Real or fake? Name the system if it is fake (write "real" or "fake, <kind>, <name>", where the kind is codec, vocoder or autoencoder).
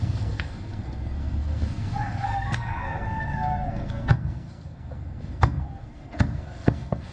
fake, codec, SNAC